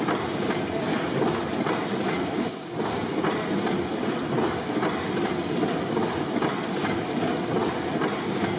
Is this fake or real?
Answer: real